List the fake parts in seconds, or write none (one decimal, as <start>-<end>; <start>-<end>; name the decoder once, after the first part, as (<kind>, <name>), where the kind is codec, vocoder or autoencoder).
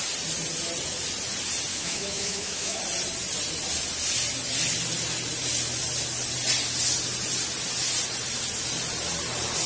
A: 1.7-2.8 (autoencoder, DAC-VAE)